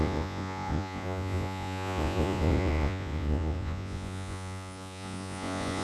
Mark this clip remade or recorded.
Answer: remade